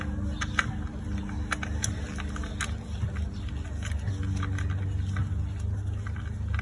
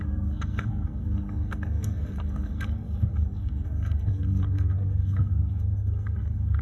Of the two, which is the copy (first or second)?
second